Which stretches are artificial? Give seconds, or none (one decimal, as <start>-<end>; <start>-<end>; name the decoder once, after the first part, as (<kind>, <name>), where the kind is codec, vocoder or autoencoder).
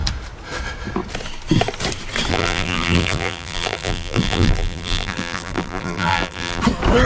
2.3-6.6 (vocoder, BigVGAN v2)